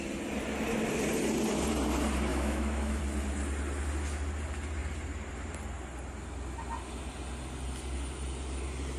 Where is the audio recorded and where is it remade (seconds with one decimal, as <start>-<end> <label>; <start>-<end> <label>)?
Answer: 0.0-2.3 recorded; 2.3-3.0 remade; 3.0-9.0 recorded